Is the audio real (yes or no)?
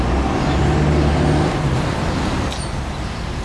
yes